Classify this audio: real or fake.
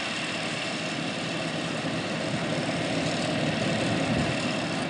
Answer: real